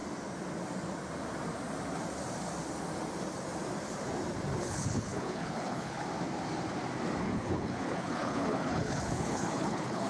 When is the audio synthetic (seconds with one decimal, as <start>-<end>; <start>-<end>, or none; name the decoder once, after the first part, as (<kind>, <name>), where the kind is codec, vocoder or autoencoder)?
4.6-6.0 (codec, HILCodec); 7.2-10.1

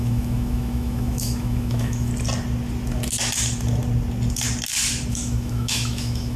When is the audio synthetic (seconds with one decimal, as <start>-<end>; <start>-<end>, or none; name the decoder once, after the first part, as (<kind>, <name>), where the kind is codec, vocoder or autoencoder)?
0.0-2.1 (autoencoder, DAC-VAE); 5.1-6.4

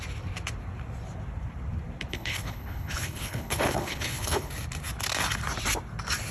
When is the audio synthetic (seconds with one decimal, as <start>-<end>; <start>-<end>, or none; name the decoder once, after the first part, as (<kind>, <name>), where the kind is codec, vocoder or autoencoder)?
2.1-4.5 (codec, HILCodec)